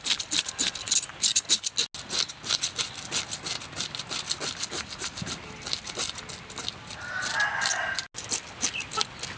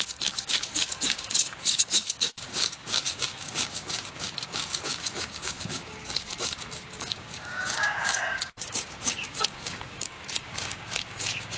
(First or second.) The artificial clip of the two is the second